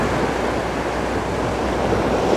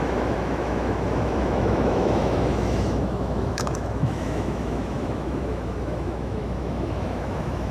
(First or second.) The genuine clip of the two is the first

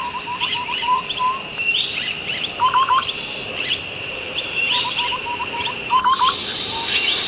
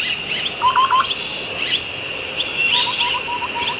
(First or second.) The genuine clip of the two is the second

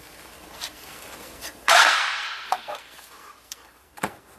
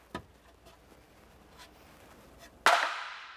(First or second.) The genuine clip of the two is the second